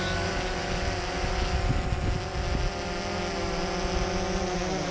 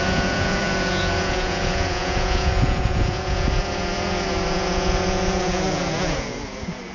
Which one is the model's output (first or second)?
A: second